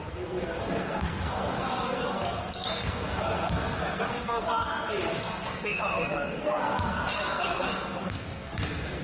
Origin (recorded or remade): remade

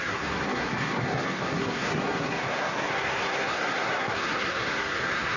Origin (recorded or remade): remade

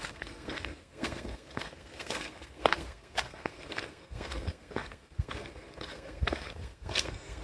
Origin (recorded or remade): remade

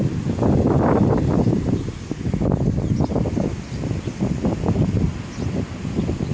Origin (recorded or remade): recorded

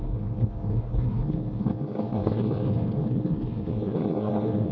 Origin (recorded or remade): remade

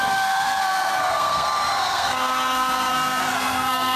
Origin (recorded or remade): remade